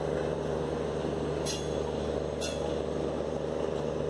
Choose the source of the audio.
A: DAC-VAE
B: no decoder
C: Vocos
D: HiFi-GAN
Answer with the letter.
B